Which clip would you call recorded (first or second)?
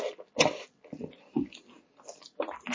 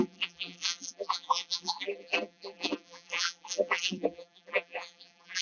first